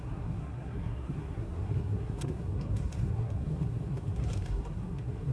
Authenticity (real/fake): fake